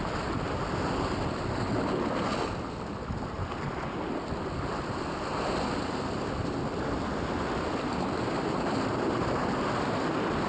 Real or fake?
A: real